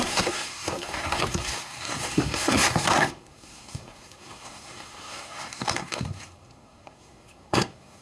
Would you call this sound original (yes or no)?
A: no